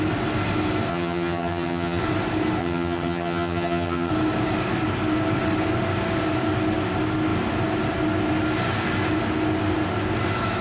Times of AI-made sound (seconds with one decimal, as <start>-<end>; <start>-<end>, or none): 0.9-2.0; 2.6-4.1